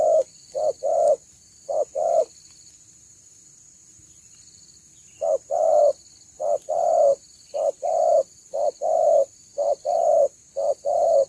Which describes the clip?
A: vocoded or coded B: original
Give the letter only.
B